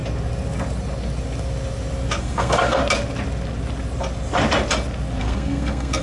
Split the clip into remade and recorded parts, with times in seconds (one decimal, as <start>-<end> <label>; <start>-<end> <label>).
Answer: 0.0-2.2 recorded; 2.2-2.8 remade; 2.8-5.2 recorded; 5.2-6.0 remade